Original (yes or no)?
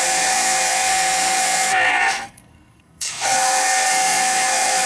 no